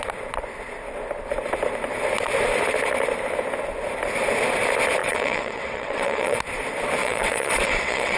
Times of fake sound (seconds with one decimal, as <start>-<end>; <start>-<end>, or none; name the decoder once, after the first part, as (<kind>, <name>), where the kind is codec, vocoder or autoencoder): 5.0-6.4 (vocoder, WaveNeXt); 7.0-8.2